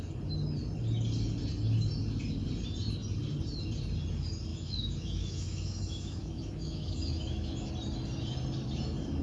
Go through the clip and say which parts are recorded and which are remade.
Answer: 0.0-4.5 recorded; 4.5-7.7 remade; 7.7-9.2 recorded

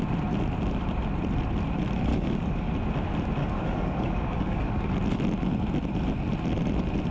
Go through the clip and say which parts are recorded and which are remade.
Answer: 0.0-2.1 recorded; 2.1-2.7 remade; 2.7-3.4 recorded; 3.4-4.9 remade; 4.9-7.1 recorded

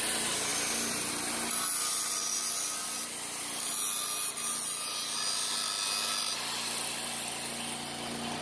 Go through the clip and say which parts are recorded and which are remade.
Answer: 0.0-8.4 recorded

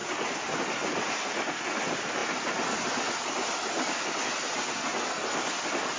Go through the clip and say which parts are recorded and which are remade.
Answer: 0.0-6.0 recorded

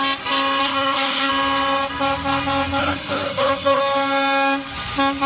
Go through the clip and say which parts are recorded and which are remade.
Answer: 0.0-0.6 recorded; 0.6-1.3 remade; 1.3-2.8 recorded; 2.8-3.8 remade; 3.8-5.3 recorded